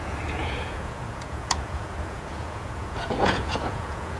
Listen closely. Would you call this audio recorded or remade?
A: remade